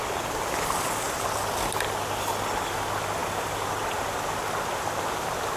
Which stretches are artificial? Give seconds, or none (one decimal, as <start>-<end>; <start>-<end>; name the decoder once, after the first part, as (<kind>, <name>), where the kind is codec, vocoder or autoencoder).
none